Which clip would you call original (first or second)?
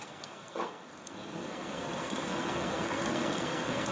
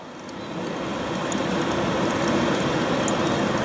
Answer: second